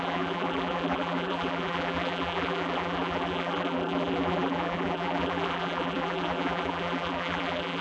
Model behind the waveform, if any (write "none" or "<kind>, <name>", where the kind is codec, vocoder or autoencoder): vocoder, BigVGAN v2